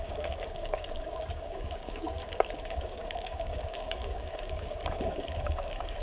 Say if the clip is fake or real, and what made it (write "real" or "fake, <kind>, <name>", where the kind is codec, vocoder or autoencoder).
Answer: fake, codec, DAC